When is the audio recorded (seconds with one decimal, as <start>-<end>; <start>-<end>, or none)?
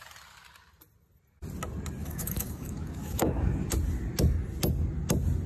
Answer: 0.0-2.0; 3.7-5.5